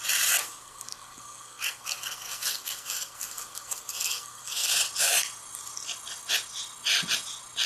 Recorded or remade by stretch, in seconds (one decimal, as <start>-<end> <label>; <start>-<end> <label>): 0.0-0.4 recorded; 0.4-4.7 remade; 4.7-7.7 recorded

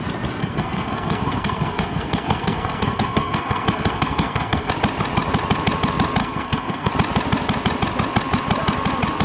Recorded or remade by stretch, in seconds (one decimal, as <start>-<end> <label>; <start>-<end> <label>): 0.0-0.4 recorded; 0.4-4.7 remade; 4.7-6.2 recorded; 6.2-6.9 remade; 6.9-9.2 recorded

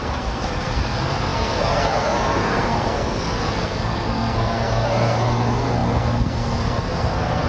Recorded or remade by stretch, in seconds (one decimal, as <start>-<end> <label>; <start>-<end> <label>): 0.0-7.5 remade

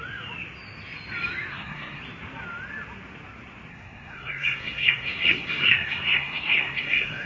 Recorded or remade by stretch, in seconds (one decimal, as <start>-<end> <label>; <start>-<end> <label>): 0.0-1.5 recorded; 1.5-2.0 remade; 2.0-3.7 recorded; 3.7-7.3 remade

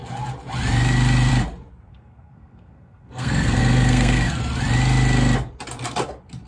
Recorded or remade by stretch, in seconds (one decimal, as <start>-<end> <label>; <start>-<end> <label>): 0.0-1.9 recorded; 1.9-4.4 remade; 4.4-6.5 recorded

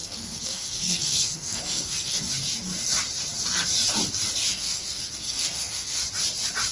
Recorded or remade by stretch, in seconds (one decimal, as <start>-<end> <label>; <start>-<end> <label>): 0.0-2.2 remade; 2.2-4.5 recorded; 4.5-6.0 remade; 6.0-6.7 recorded